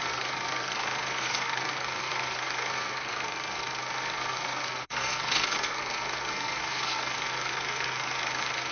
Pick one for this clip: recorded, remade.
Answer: remade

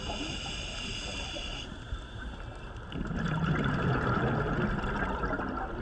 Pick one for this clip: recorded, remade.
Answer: recorded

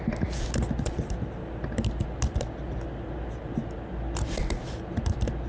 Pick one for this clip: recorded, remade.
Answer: recorded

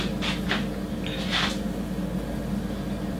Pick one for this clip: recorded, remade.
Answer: recorded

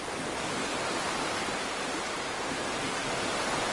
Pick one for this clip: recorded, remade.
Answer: recorded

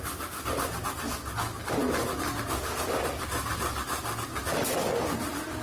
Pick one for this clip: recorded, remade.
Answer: recorded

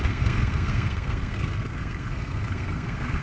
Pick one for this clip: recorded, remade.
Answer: remade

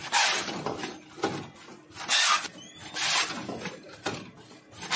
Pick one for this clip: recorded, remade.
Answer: recorded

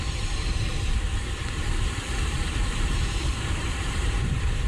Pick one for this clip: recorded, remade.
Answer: remade